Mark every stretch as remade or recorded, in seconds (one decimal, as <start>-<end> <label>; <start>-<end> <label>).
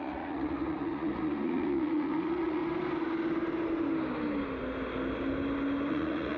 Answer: 0.0-2.6 remade; 2.6-5.9 recorded; 5.9-6.4 remade